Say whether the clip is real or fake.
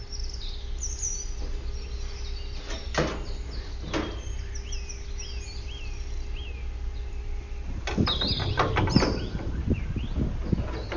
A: real